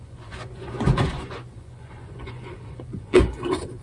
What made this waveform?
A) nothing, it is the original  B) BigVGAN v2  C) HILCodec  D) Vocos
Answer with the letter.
D